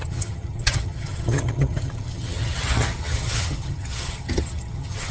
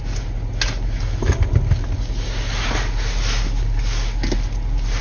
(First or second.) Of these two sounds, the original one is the second